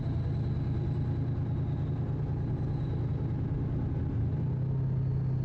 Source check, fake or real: real